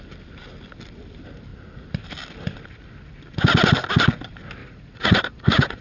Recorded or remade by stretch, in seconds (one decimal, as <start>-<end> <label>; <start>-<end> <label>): 0.0-4.6 recorded; 4.6-5.8 remade